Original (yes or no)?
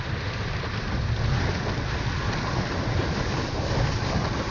yes